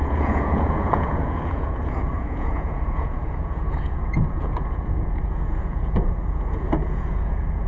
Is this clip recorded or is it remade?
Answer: remade